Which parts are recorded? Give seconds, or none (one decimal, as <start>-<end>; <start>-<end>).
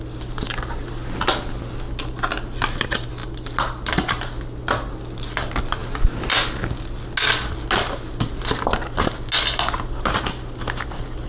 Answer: 0.0-11.3